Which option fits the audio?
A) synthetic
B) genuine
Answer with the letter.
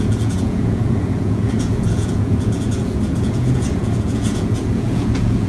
A